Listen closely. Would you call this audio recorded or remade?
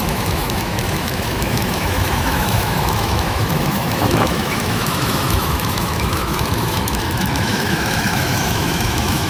remade